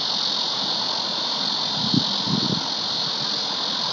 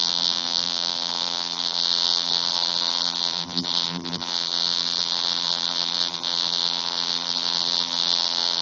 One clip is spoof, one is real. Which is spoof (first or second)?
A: second